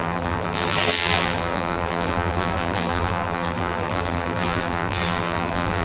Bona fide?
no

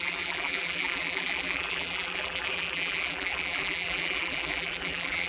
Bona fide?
no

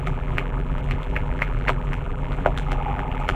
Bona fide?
no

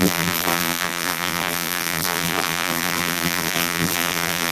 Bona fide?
no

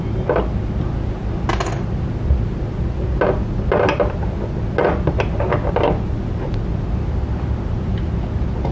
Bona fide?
yes